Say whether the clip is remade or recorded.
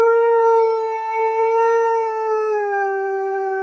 remade